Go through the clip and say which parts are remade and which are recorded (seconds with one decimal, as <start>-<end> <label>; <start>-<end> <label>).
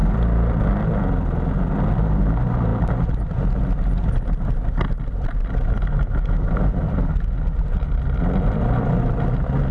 0.0-0.7 remade; 0.7-9.7 recorded